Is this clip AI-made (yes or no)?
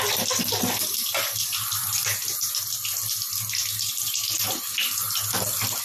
no